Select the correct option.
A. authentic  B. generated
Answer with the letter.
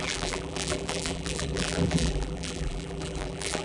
B